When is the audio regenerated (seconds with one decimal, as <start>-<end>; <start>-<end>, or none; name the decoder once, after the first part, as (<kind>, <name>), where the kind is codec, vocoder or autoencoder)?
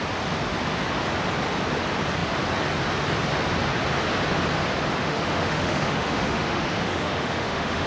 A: 5.0-7.9 (autoencoder, DAC-VAE)